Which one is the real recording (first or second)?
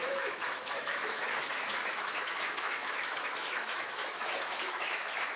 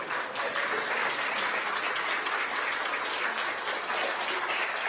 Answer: second